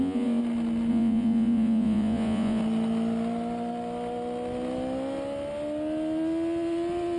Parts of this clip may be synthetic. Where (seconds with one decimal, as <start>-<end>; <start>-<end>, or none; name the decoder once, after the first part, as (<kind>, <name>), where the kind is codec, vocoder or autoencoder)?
0.0-0.4 (vocoder, Vocos); 0.9-2.6